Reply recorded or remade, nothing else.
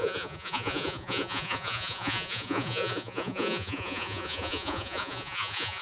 remade